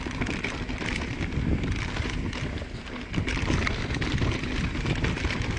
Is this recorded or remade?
recorded